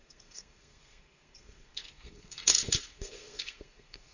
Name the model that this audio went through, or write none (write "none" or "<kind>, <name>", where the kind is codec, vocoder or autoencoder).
codec, SNAC